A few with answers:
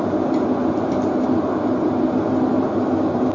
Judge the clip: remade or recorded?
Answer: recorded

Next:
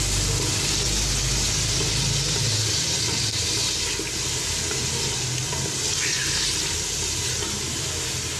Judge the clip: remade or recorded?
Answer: recorded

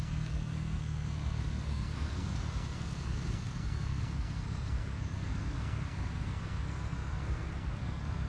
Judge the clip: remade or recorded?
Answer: remade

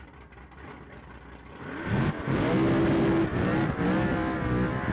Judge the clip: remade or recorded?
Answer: recorded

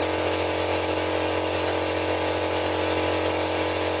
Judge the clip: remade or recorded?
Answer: recorded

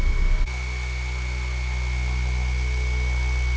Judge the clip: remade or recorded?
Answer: recorded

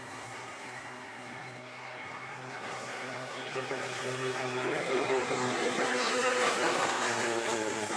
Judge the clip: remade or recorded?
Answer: remade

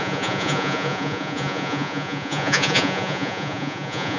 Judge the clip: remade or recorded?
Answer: remade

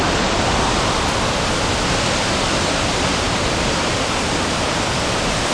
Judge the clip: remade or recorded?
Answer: recorded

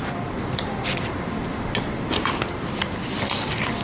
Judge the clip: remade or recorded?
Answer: recorded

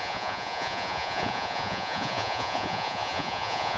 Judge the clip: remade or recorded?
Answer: remade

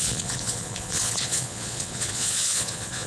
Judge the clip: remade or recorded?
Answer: remade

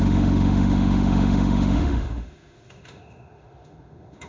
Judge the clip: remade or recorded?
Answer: remade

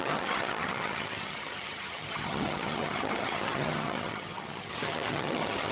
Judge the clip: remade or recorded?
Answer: remade